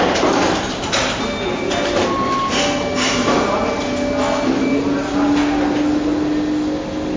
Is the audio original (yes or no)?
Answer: yes